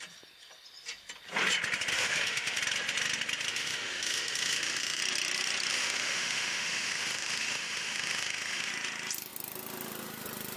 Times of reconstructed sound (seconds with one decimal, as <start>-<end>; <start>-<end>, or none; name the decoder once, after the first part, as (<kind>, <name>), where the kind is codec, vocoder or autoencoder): 1.9-2.6 (autoencoder, DAC-VAE); 3.5-5.0; 5.7-8.7